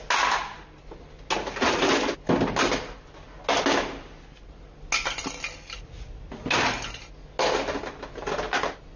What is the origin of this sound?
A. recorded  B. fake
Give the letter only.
A